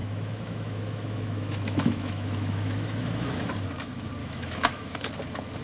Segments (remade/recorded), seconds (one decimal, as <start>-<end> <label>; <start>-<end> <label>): 0.0-3.4 remade; 3.4-4.2 recorded; 4.2-4.9 remade; 4.9-5.6 recorded